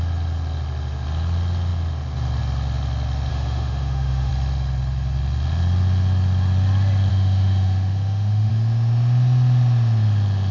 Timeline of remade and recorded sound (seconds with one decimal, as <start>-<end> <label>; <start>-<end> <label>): 0.0-3.3 recorded; 3.3-4.3 remade; 4.3-7.1 recorded; 7.1-8.5 remade; 8.5-10.5 recorded